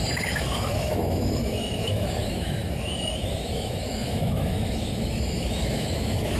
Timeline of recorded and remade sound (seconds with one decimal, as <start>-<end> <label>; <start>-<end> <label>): 0.0-6.4 remade